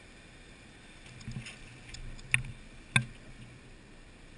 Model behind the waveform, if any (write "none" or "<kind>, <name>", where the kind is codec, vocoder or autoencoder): none